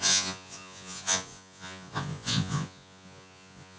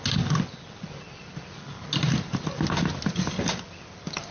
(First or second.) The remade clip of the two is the first